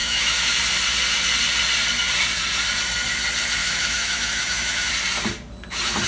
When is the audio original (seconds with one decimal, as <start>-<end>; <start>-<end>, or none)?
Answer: 0.6-3.6; 4.9-6.1

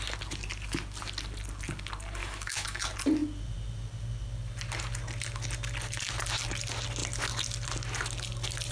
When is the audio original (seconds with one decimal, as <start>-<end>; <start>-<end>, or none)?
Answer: 0.0-2.2; 2.8-8.7

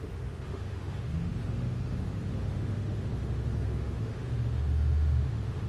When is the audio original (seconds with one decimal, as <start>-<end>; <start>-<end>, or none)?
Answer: none

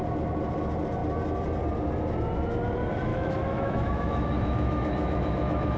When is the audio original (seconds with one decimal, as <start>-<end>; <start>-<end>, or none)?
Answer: 0.0-3.1

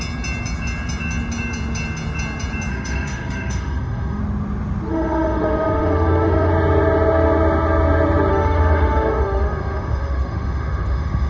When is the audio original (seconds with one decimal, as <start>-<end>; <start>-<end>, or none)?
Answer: 0.0-2.7; 4.2-4.9; 6.5-8.3

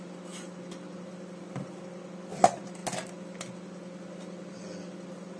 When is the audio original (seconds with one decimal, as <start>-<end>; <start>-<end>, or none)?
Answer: 0.0-5.4

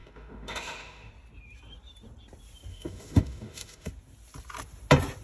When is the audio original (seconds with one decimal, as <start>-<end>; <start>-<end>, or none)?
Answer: 1.1-2.7; 3.9-5.2

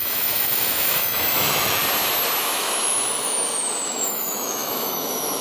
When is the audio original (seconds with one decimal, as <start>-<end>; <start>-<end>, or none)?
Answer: 1.8-2.4